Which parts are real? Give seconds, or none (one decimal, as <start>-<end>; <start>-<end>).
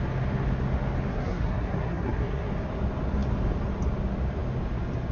0.0-1.1; 2.5-5.1